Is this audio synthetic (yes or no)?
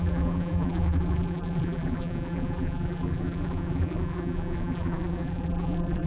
yes